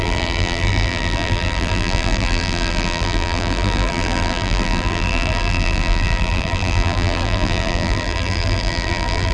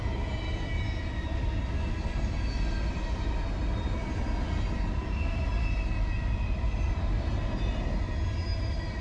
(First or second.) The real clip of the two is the second